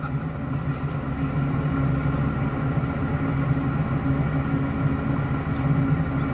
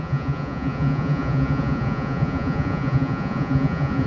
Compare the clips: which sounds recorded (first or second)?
first